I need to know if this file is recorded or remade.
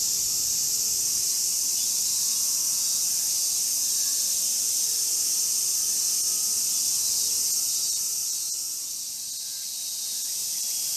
recorded